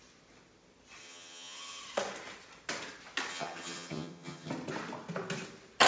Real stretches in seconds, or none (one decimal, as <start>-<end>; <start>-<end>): 0.0-1.0; 1.8-3.3; 4.5-5.9